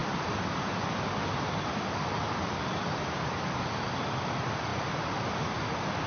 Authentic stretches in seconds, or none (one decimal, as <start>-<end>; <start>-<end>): 0.0-6.1